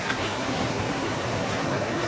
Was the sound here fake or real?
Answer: fake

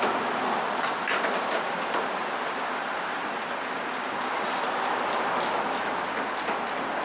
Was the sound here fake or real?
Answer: real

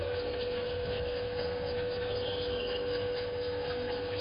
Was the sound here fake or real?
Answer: fake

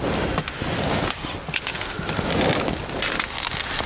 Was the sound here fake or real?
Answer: real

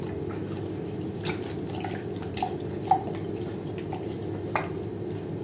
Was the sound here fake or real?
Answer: real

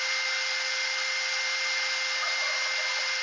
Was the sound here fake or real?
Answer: real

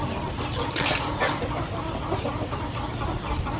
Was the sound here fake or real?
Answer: real